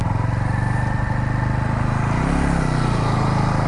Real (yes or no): yes